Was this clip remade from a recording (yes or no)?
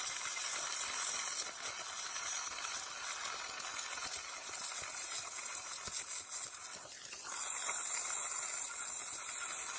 no